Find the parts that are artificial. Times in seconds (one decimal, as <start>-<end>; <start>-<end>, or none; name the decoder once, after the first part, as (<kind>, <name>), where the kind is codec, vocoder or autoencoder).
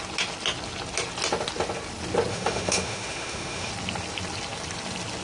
2.3-3.7 (autoencoder, DAC-VAE)